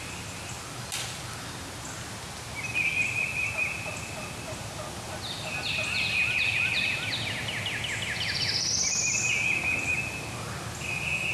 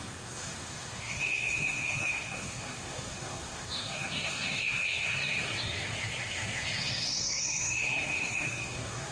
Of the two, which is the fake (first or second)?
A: second